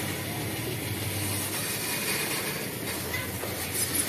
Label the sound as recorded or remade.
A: recorded